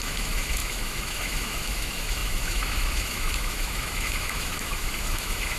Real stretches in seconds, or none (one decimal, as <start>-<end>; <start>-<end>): none